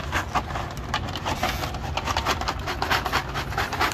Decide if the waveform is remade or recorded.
recorded